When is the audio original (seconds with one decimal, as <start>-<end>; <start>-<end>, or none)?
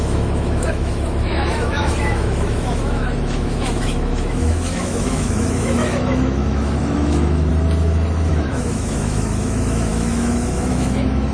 7.5-8.3